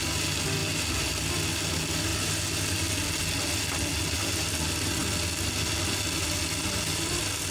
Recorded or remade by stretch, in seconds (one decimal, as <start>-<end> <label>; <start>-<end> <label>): 0.0-7.5 recorded